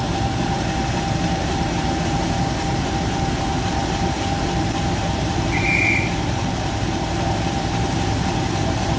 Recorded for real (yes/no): no